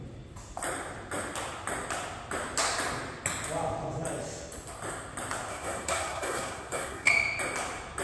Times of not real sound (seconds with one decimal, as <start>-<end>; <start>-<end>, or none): 5.5-7.1